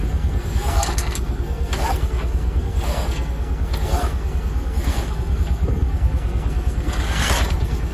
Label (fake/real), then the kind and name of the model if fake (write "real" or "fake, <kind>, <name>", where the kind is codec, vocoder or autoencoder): fake, codec, SNAC